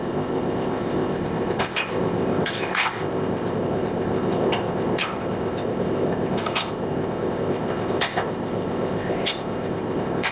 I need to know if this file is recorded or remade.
remade